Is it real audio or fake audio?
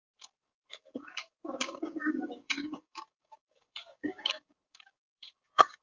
fake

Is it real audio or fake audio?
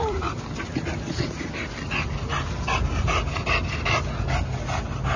real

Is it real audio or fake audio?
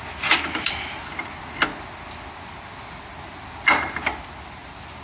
real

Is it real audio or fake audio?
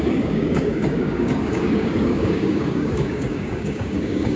fake